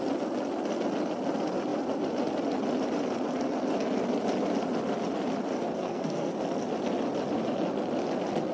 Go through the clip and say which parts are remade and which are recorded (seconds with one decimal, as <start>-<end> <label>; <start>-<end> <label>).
0.0-5.8 recorded; 5.8-6.3 remade; 6.3-8.5 recorded